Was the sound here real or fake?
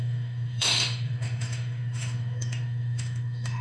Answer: fake